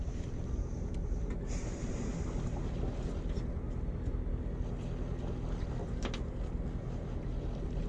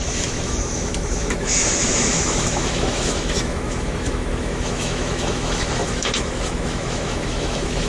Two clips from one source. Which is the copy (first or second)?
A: second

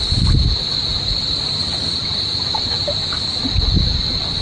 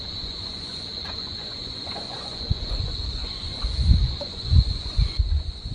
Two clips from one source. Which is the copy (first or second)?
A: second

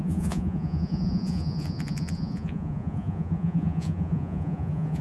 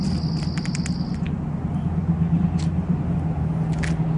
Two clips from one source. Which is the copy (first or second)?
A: first